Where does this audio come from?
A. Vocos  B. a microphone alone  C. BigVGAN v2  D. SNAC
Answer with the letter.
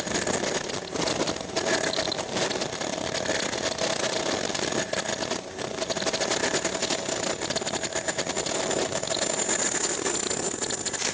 B